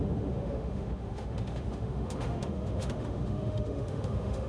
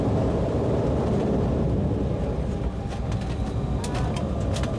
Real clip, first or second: second